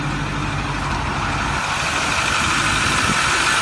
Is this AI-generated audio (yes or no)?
no